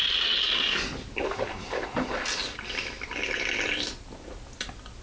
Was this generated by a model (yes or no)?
no